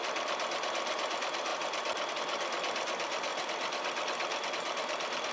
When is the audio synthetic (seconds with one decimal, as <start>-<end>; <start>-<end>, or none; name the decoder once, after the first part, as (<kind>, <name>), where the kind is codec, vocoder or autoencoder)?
1.5-2.1 (vocoder, BigVGAN v2); 3.3-4.5